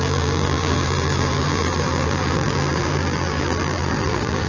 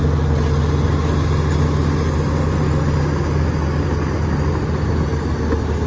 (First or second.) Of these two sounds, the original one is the second